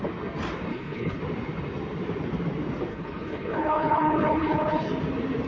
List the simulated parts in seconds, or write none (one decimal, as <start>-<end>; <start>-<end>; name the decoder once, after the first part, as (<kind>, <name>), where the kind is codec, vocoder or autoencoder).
0.7-1.2 (codec, HILCodec); 2.9-4.9